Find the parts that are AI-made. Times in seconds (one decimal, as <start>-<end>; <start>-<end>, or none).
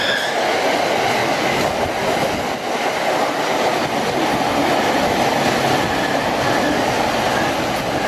1.2-1.8